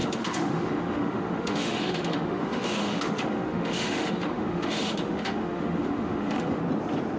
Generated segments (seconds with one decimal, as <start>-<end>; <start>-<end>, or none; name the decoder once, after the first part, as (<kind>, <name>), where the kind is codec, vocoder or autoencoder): 0.0-6.6 (autoencoder, DAC-VAE)